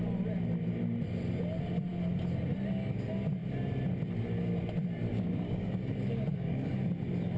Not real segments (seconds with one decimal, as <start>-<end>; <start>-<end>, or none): 5.1-6.7

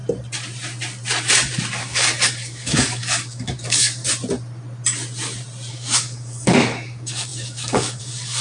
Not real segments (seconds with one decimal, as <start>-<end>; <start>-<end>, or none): 1.7-4.0; 5.7-8.4

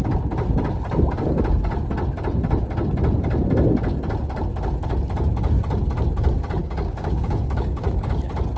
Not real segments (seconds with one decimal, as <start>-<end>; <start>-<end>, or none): 6.6-8.1

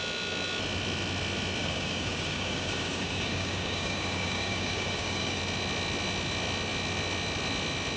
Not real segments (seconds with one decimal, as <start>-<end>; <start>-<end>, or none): 1.6-5.4

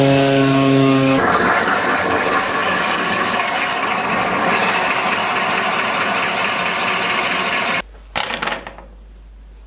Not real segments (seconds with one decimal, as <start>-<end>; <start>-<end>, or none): 0.0-5.2

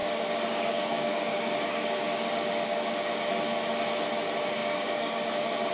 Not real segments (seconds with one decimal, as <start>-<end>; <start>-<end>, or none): 0.0-3.4; 4.6-5.7